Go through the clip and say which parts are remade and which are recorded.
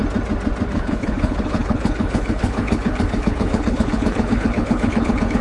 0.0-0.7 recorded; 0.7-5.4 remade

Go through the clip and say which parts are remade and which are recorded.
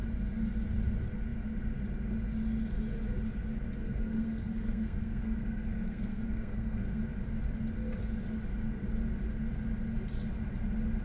0.0-3.8 recorded; 3.8-7.0 remade; 7.0-11.0 recorded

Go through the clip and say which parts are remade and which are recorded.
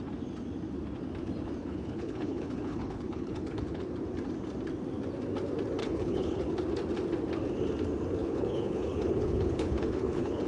0.0-1.6 recorded; 1.6-3.9 remade; 3.9-5.8 recorded; 5.8-6.4 remade; 6.4-8.2 recorded; 8.2-10.5 remade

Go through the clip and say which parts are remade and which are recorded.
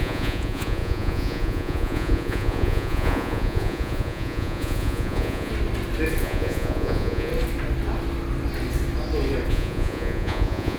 0.0-5.5 remade; 5.5-6.2 recorded; 6.2-7.3 remade; 7.3-9.5 recorded; 9.5-10.8 remade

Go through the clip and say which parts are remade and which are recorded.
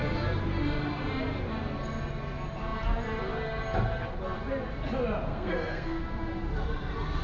0.0-5.3 recorded; 5.3-6.0 remade; 6.0-7.2 recorded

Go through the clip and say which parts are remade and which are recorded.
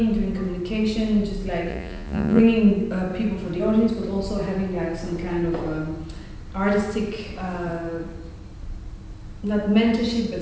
0.0-1.7 recorded; 1.7-2.4 remade; 2.4-10.4 recorded